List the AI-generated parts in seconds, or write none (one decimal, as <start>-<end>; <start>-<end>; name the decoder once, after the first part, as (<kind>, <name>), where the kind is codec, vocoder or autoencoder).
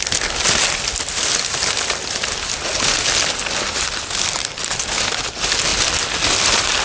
none